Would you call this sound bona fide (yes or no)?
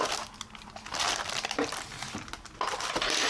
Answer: yes